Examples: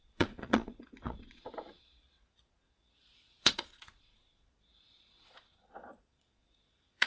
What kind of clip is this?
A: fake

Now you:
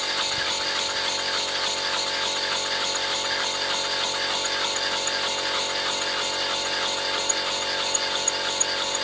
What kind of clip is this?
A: real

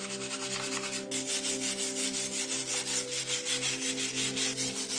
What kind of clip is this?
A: real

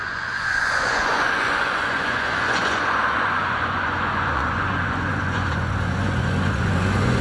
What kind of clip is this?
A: fake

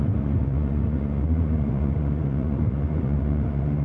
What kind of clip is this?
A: fake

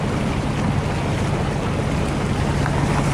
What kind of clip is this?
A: real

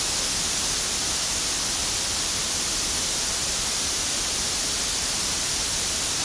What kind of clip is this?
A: real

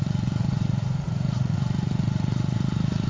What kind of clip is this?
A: fake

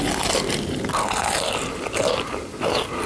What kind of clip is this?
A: real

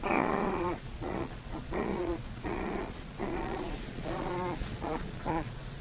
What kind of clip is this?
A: fake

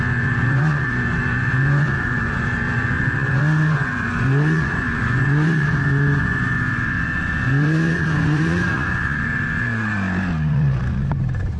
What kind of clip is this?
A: fake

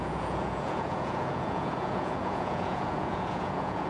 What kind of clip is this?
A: fake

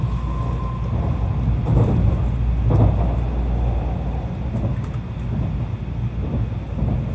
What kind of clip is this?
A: real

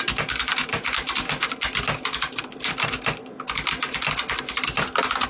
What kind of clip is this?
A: real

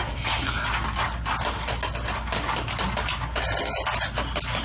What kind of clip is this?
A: real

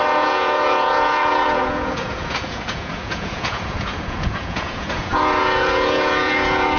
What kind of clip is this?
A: fake